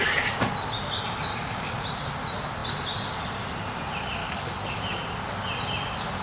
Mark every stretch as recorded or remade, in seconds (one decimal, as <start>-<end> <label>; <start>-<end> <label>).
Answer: 0.0-1.3 recorded; 1.3-1.8 remade; 1.8-4.2 recorded; 4.2-4.8 remade; 4.8-6.2 recorded